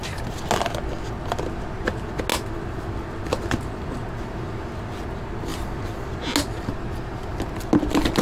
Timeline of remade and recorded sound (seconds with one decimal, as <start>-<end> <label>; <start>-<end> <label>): 0.0-8.2 recorded

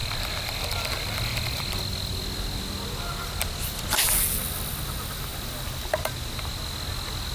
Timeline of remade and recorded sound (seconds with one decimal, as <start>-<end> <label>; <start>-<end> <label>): 0.0-7.3 recorded

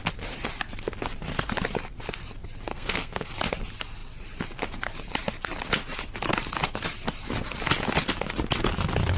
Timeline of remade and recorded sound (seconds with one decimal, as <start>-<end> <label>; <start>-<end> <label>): 0.0-2.7 recorded; 2.7-3.3 remade; 3.3-9.2 recorded

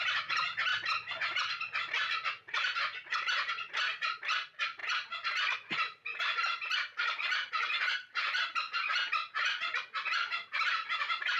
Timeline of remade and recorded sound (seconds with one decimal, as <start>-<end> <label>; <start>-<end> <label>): 0.0-11.4 recorded

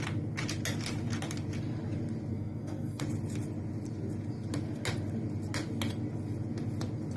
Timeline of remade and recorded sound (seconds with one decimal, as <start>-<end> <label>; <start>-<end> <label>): 0.0-2.3 recorded; 2.3-3.0 remade; 3.0-7.2 recorded

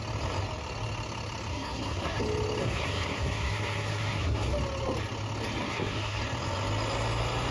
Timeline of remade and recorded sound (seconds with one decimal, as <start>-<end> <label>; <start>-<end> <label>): 0.0-1.5 recorded; 1.5-2.2 remade; 2.2-2.6 recorded; 2.6-4.5 remade; 4.5-5.6 recorded; 5.6-6.2 remade; 6.2-7.5 recorded